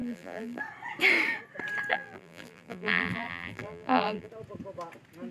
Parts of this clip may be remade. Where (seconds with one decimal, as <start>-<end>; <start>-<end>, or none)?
0.0-0.6; 1.9-4.3